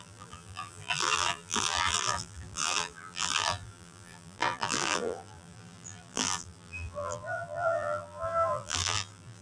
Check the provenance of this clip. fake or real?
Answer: fake